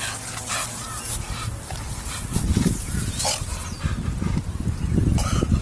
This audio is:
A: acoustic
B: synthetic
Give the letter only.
A